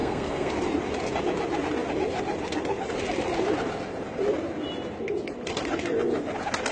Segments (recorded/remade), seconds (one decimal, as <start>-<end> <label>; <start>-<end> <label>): 0.0-0.5 remade; 0.5-6.7 recorded